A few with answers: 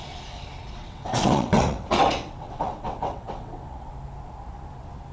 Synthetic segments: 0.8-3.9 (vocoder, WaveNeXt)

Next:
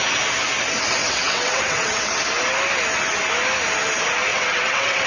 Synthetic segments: 1.0-2.2 (vocoder, WaveNeXt); 4.3-5.1

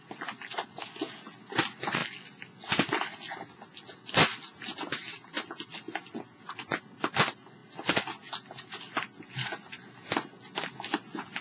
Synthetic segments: none

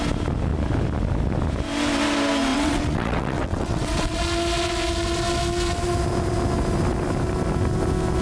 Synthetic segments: 2.5-4.2 (vocoder, WaveNeXt)